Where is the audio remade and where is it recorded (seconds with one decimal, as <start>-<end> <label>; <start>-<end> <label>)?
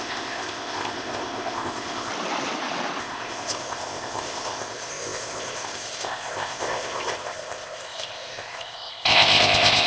0.0-2.1 remade; 2.1-3.0 recorded; 3.0-9.9 remade